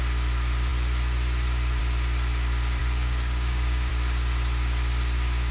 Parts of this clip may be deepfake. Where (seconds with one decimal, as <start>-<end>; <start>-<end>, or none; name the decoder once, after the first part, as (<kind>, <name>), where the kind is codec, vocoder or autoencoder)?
2.8-3.9 (codec, DAC)